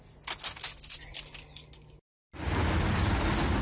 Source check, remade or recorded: recorded